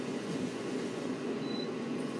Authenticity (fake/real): fake